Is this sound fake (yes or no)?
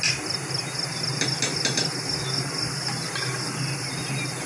no